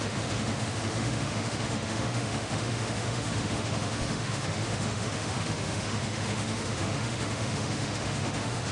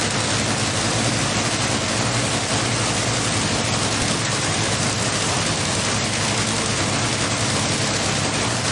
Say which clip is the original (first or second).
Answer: second